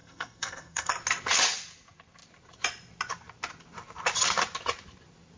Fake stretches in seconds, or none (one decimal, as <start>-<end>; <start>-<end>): 0.0-0.9